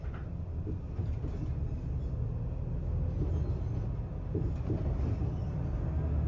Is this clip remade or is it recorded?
recorded